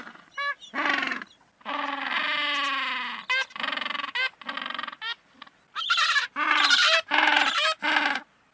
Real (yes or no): yes